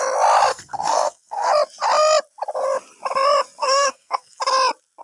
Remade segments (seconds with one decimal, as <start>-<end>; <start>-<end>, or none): 0.5-1.5; 3.6-4.4